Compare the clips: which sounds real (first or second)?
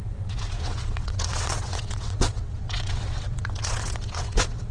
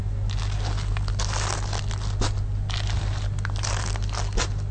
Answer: second